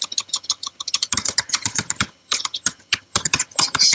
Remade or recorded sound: remade